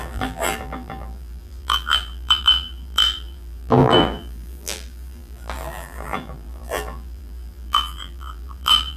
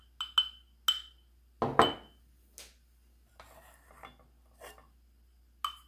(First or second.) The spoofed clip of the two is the first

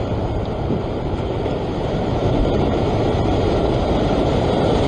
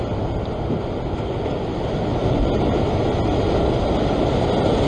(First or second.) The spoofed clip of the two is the first